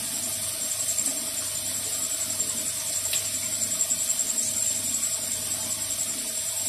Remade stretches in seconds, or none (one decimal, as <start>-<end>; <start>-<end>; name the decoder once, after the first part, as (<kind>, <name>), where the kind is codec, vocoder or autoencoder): none